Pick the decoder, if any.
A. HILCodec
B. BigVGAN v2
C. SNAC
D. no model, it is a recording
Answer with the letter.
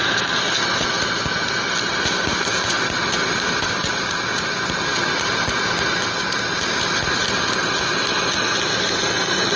D